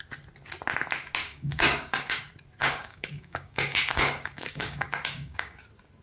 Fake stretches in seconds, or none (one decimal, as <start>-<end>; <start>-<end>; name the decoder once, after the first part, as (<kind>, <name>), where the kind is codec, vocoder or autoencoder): 1.2-2.2 (codec, DAC); 2.6-5.6